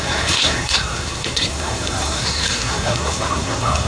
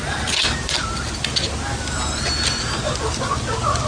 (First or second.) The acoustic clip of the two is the second